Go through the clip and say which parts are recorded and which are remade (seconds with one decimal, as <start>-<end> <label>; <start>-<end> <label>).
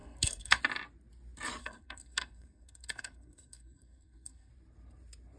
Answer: 0.0-0.6 remade; 0.6-1.6 recorded; 1.6-4.5 remade; 4.5-5.4 recorded